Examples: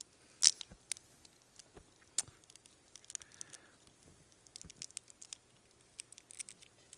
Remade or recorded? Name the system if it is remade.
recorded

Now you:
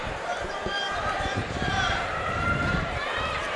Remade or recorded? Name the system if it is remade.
remade, vocoder, BigVGAN v2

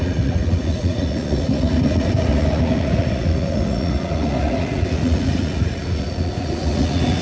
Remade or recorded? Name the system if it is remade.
remade, vocoder, Vocos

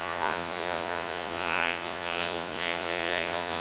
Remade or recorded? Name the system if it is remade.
remade, vocoder, Vocos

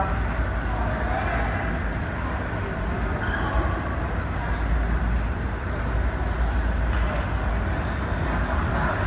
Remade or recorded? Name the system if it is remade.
recorded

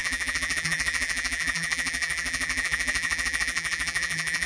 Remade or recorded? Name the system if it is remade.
remade, vocoder, BigVGAN v2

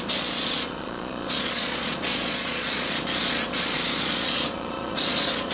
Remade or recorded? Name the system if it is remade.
remade, vocoder, Vocos